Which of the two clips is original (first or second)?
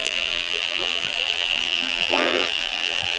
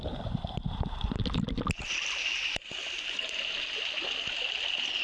second